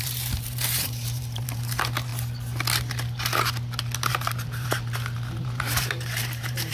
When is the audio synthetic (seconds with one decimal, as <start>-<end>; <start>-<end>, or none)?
0.0-2.1; 4.1-6.7